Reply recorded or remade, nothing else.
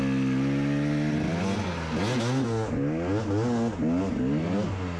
recorded